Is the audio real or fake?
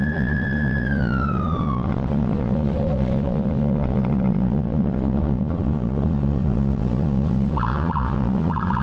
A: fake